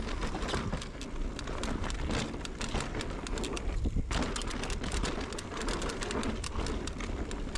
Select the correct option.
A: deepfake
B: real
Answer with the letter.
B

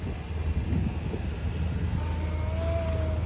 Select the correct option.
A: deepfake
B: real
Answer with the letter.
B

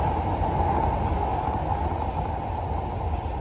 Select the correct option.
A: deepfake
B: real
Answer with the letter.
B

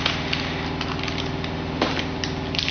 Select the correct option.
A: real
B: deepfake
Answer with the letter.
A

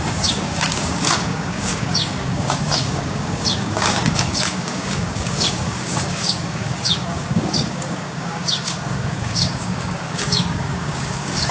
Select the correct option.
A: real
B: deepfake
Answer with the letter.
B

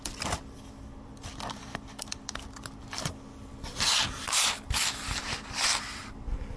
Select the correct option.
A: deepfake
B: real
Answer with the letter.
B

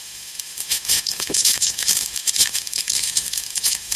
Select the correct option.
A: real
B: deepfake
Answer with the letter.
B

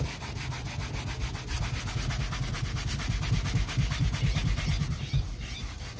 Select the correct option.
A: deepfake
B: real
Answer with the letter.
B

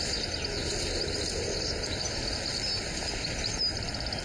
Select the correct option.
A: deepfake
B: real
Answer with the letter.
B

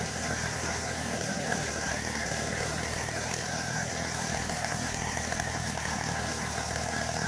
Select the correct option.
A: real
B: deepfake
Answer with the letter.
B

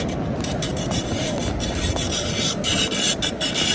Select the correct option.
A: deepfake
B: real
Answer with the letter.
B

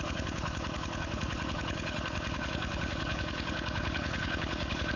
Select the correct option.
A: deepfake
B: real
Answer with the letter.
A